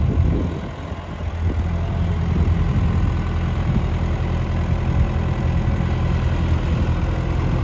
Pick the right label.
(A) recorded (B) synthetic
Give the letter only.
A